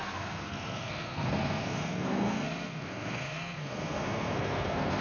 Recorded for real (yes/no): no